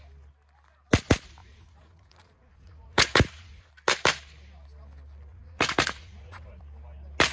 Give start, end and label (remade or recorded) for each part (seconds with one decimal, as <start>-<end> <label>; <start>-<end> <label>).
0.0-1.4 recorded; 1.4-3.7 remade; 3.7-5.3 recorded; 5.3-6.6 remade; 6.6-7.3 recorded